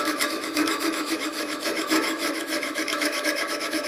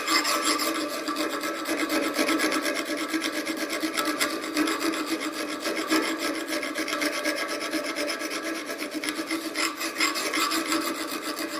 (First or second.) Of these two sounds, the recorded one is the second